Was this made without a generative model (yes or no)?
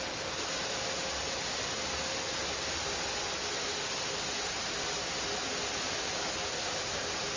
yes